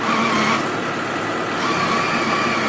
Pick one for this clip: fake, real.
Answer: real